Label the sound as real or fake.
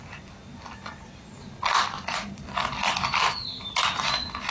real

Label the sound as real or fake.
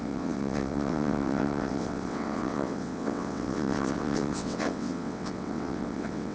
fake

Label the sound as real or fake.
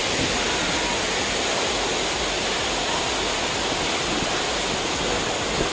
real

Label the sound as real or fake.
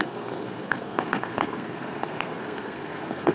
fake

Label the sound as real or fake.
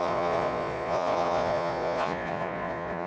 fake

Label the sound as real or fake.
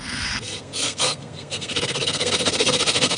fake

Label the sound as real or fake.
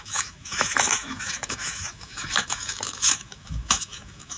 fake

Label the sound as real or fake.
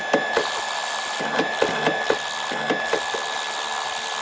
real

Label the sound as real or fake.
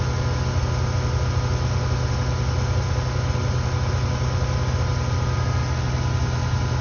real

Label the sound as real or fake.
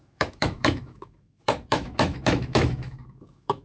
fake